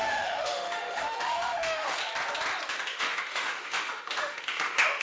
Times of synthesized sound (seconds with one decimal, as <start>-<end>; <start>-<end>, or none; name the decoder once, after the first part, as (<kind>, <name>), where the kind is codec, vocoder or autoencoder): 0.0-2.0 (autoencoder, DAC-VAE); 2.7-5.0